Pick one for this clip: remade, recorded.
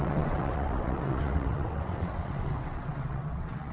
remade